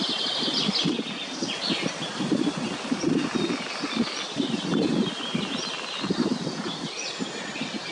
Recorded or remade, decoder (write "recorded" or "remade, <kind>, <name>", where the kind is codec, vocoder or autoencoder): recorded